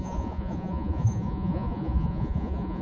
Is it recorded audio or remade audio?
remade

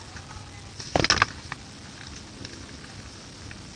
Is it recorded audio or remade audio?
recorded